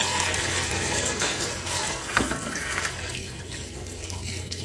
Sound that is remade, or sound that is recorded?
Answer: remade